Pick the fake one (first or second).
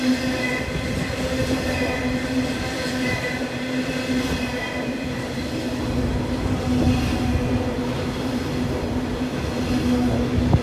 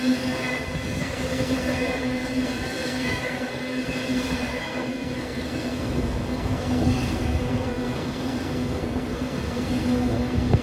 second